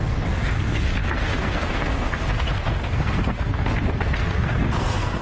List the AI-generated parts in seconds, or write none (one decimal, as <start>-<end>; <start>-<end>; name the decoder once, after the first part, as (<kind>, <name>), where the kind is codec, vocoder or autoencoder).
0.0-5.2 (codec, SNAC)